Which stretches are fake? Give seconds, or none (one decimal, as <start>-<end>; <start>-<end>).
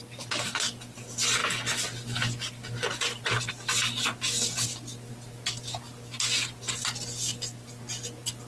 none